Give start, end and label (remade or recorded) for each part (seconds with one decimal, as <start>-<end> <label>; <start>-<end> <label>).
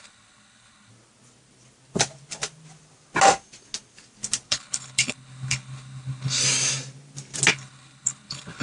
0.0-0.9 remade; 0.9-4.5 recorded; 4.5-6.4 remade; 6.4-7.5 recorded; 7.5-8.6 remade